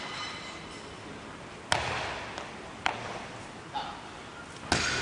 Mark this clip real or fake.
real